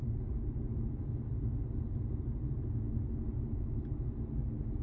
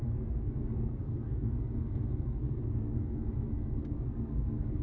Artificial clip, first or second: second